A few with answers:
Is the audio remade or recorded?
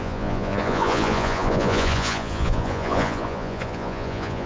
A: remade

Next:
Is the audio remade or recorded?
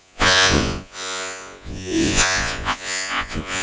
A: remade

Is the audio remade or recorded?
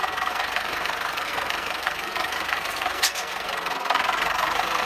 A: remade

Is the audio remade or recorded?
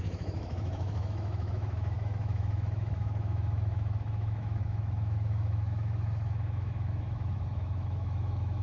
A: remade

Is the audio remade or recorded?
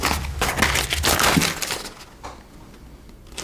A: recorded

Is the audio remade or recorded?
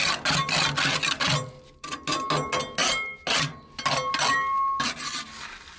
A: recorded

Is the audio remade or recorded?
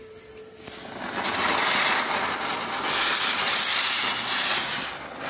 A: recorded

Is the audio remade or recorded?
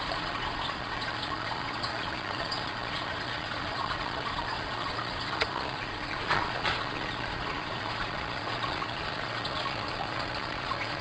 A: remade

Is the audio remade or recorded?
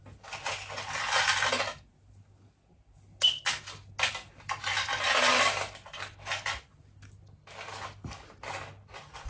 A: recorded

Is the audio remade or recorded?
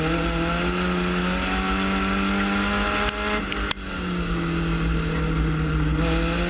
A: recorded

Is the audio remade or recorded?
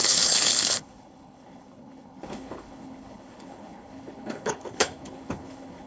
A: remade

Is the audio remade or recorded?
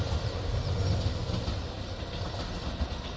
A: recorded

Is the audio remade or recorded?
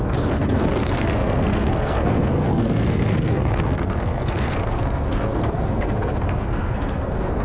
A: remade